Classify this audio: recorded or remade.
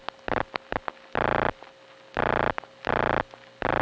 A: recorded